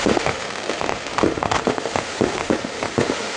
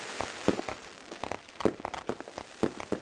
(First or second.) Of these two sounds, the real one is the second